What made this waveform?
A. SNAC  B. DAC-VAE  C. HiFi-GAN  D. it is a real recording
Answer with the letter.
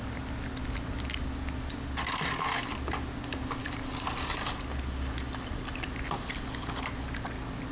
D